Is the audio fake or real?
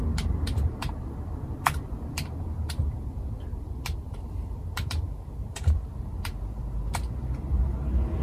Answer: fake